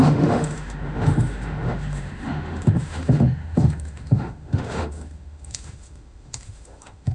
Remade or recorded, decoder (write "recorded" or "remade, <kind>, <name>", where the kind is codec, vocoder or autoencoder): remade, autoencoder, DAC-VAE